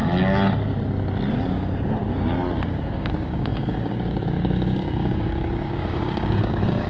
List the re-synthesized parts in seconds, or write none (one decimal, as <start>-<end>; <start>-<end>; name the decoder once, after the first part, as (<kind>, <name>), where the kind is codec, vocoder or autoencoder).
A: 2.7-6.9 (codec, DAC)